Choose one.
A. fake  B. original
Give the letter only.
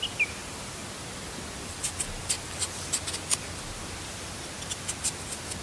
B